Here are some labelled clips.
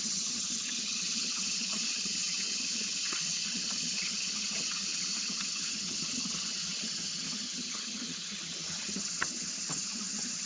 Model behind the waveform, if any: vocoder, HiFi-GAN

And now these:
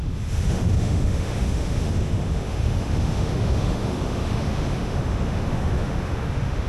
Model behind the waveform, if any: autoencoder, DAC-VAE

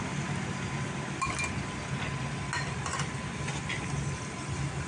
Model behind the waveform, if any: none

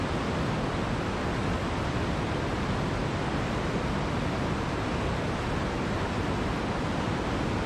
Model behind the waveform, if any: none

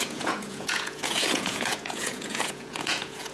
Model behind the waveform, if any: vocoder, Vocos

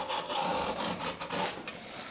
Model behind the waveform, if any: none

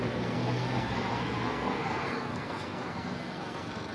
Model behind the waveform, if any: codec, SNAC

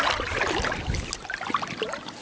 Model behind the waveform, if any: none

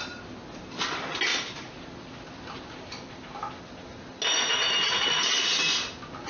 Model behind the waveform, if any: none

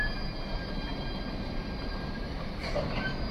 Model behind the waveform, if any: none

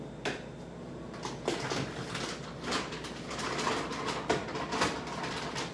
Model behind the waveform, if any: none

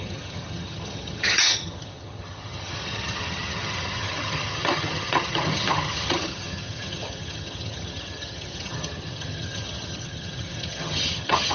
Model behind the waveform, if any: vocoder, HiFi-GAN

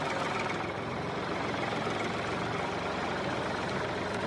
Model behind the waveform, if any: vocoder, BigVGAN v2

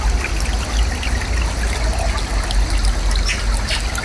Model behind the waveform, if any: none